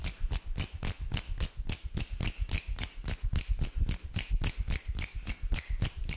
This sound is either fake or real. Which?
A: real